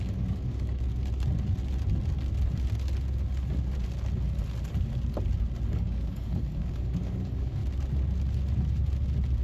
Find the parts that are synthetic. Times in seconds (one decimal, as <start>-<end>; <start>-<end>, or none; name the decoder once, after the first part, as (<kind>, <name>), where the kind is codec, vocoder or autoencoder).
0.0-0.9 (codec, DAC); 5.7-7.6